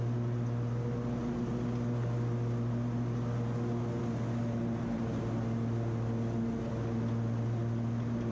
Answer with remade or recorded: recorded